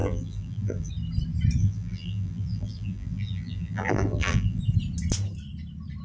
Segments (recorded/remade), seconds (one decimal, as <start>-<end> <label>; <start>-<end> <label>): 0.0-0.9 remade; 0.9-1.6 recorded; 1.6-4.6 remade; 4.6-6.0 recorded